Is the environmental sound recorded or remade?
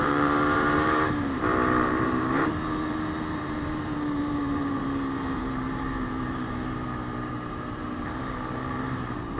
remade